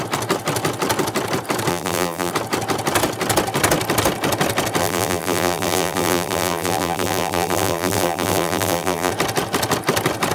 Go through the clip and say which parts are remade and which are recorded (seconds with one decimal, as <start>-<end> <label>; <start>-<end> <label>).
0.0-1.7 recorded; 1.7-2.3 remade; 2.3-4.8 recorded; 4.8-9.1 remade; 9.1-10.3 recorded